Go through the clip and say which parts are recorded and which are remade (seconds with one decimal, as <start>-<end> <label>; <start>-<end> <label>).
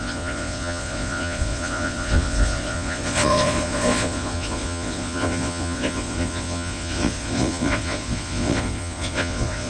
0.0-9.7 remade